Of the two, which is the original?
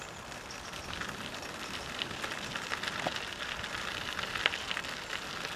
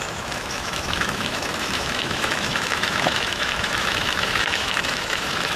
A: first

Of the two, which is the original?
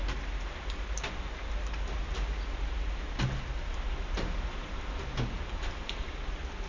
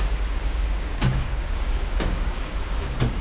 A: first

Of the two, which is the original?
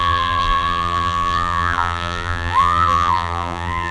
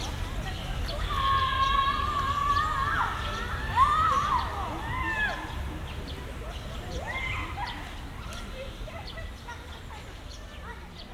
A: second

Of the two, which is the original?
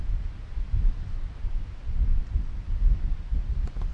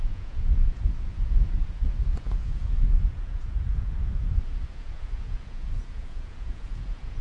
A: first